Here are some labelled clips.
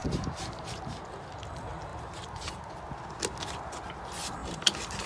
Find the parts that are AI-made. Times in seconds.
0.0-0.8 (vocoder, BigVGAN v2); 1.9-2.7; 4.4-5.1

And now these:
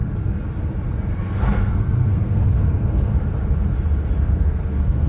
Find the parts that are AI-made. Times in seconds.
1.2-3.1 (codec, SNAC); 4.2-5.1

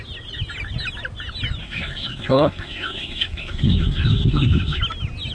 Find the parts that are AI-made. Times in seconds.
1.6-4.8 (codec, SNAC)

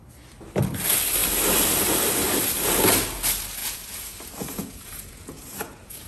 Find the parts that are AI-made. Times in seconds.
3.6-6.1 (vocoder, Vocos)

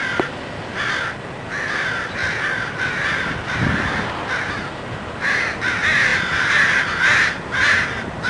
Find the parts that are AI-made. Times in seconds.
none

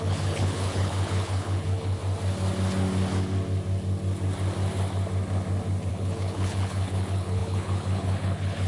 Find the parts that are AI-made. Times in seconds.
0.0-2.0 (codec, HILCodec); 5.9-8.7

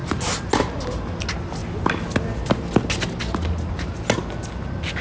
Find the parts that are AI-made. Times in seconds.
none

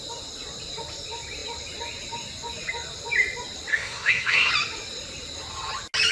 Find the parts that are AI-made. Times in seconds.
3.7-4.5 (codec, SNAC)